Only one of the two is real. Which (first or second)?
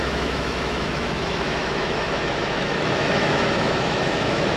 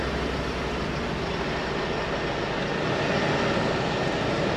second